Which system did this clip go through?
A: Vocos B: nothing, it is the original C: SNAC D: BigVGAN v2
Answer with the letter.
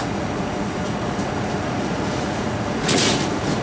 A